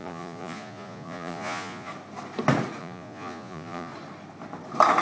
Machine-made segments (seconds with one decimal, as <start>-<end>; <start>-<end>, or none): 0.0-1.9; 2.8-3.9